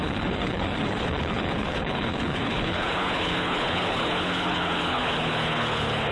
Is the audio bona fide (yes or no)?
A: no